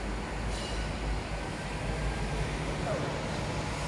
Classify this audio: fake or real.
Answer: real